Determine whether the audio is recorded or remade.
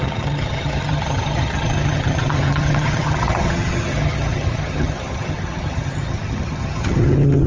remade